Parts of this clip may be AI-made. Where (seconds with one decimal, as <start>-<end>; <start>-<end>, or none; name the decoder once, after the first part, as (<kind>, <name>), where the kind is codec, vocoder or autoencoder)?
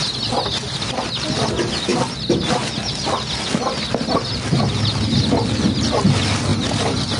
none